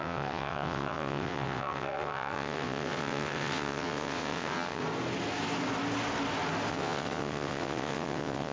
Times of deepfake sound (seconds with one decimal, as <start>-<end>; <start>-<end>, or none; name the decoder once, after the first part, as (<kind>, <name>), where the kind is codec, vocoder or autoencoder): 0.0-4.8 (vocoder, WaveNeXt); 6.7-8.5